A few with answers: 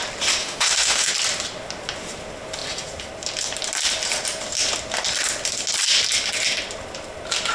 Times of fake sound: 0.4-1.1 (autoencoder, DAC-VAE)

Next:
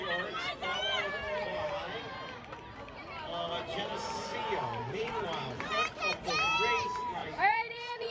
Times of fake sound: 4.3-5.7 (vocoder, Vocos); 7.2-8.1